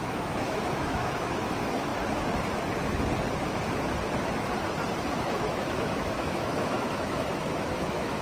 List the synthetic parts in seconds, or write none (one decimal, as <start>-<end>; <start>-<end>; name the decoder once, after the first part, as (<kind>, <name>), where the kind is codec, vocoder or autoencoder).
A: 0.0-1.9 (autoencoder, DAC-VAE); 5.1-8.2